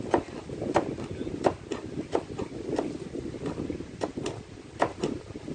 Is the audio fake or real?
real